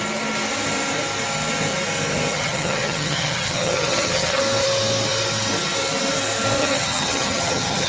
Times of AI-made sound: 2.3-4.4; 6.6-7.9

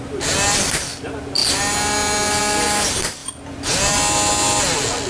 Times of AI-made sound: none

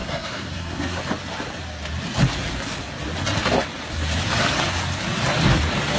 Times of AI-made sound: 0.0-1.0

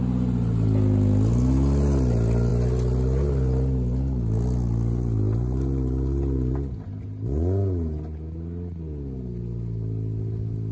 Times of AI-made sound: none

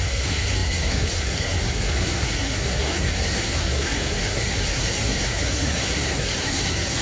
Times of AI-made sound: 0.0-7.0

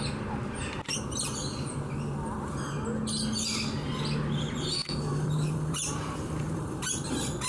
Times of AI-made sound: 5.1-7.1